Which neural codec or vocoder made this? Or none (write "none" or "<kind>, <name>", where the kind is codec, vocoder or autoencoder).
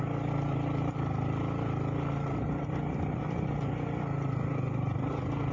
none